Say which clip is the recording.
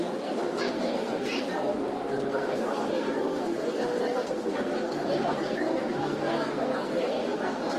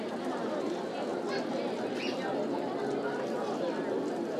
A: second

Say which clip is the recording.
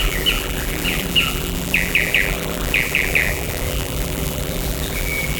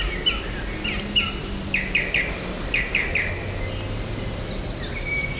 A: second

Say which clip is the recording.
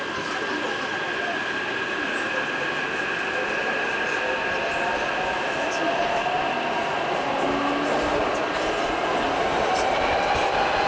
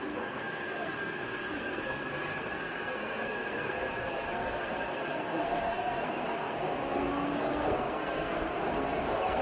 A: first